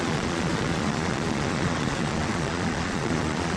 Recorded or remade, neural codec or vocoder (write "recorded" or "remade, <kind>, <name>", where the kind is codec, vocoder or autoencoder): remade, vocoder, Vocos